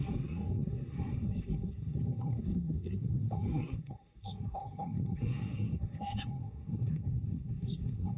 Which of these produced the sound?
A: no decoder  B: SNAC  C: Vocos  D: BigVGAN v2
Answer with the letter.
B